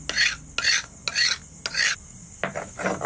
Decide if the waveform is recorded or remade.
recorded